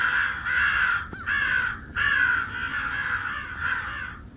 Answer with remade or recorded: recorded